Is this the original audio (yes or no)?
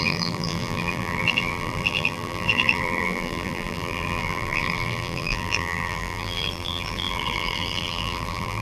no